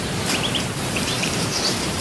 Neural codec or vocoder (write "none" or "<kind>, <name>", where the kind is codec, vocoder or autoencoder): vocoder, BigVGAN v2